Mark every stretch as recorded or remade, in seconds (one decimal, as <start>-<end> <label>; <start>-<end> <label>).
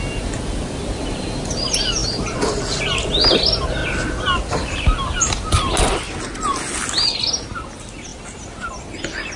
0.0-9.4 recorded